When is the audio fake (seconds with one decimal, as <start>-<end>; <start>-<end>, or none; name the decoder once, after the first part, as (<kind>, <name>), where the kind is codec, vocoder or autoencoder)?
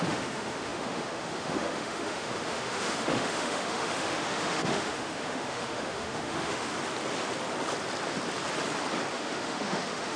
0.0-6.7 (autoencoder, DAC-VAE); 9.1-10.2